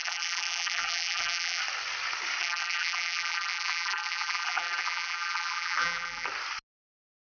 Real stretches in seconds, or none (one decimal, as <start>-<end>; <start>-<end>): 1.6-2.4; 6.3-7.3